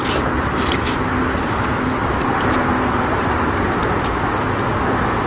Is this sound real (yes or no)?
yes